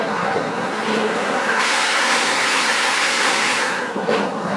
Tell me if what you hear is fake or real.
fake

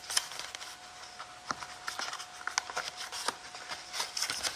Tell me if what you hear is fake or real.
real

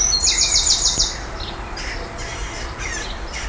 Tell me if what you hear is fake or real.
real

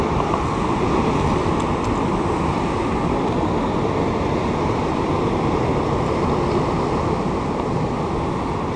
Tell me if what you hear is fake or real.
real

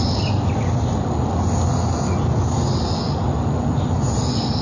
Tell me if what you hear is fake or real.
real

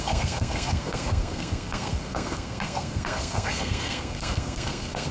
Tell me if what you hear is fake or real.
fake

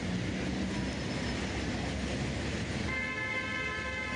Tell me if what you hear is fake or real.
real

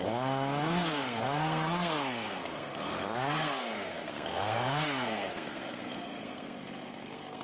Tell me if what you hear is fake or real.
fake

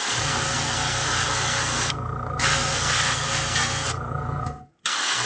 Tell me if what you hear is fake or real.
fake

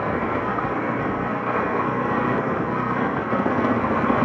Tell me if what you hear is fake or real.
fake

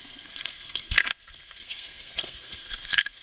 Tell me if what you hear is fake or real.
fake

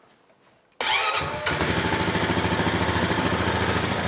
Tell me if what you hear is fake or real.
real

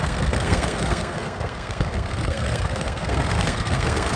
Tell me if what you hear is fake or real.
fake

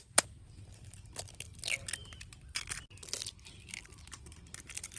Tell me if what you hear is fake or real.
real